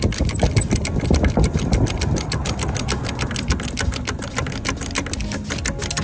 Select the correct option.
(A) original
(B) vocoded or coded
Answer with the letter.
A